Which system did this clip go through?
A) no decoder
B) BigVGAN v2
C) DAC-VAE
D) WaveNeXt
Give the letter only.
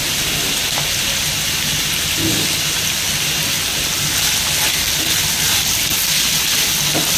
A